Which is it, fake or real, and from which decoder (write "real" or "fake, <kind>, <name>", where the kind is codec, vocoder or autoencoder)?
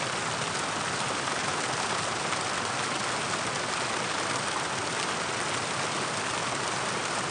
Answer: real